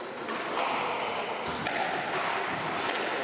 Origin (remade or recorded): recorded